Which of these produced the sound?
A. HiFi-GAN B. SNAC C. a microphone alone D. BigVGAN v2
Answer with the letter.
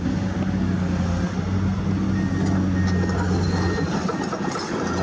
C